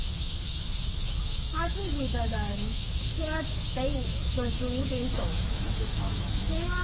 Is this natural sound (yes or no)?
no